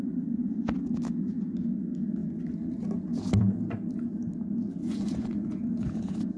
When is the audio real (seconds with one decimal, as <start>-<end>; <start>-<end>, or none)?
0.0-4.8; 5.6-6.4